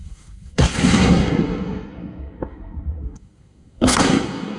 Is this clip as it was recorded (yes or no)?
no